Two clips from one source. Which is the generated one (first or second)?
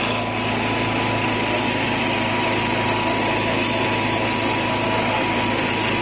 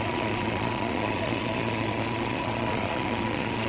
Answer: second